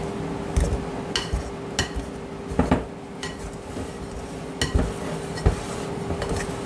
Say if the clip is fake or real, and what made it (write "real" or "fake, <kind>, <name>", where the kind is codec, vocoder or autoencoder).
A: real